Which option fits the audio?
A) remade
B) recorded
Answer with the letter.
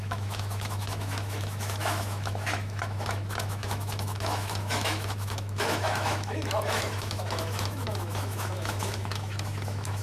A